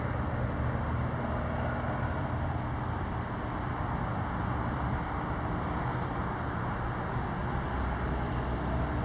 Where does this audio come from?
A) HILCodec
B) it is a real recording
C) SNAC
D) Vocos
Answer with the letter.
B